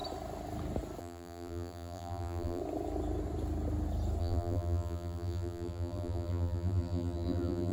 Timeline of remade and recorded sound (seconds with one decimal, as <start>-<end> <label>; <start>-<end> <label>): 0.0-1.0 recorded; 1.0-2.6 remade; 2.6-4.2 recorded; 4.2-7.7 remade